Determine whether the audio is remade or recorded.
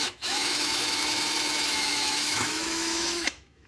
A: remade